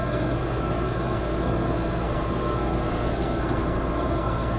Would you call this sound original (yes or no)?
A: no